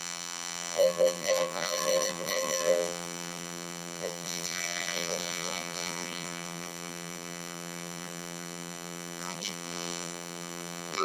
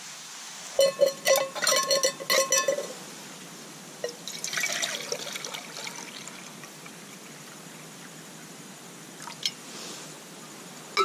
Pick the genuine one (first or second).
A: second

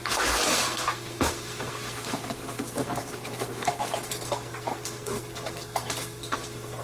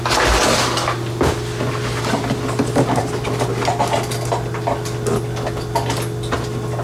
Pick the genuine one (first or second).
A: second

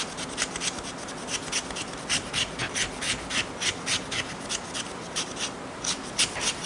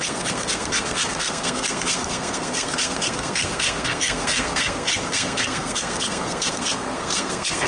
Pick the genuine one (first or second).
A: first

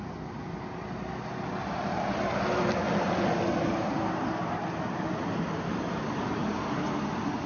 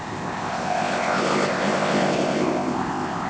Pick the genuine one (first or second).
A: first